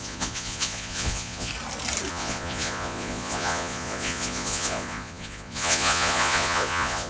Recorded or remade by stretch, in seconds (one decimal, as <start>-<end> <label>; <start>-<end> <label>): 0.0-1.5 remade; 1.5-2.1 recorded; 2.1-7.1 remade